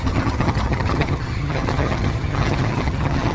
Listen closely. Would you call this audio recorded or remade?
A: remade